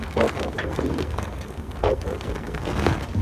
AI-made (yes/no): yes